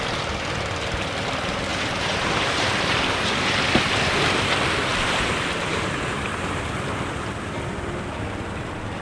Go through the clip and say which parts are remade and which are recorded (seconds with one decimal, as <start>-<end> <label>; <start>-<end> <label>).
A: 0.0-1.7 recorded; 1.7-3.5 remade; 3.5-4.9 recorded; 4.9-6.7 remade; 6.7-9.0 recorded